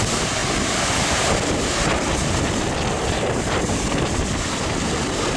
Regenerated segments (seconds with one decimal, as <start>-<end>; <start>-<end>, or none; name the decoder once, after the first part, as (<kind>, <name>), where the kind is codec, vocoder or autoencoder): none